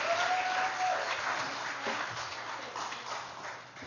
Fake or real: real